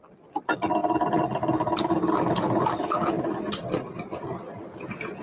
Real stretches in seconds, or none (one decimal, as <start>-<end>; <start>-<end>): 0.0-5.2